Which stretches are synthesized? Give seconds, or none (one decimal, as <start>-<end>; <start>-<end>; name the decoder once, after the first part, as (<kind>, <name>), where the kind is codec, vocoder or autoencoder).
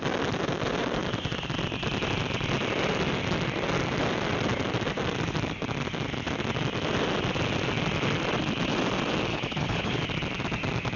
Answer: 9.3-10.0 (codec, HILCodec)